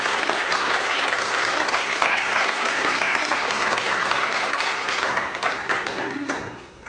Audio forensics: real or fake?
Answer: fake